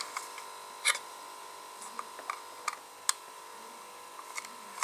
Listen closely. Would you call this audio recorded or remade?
recorded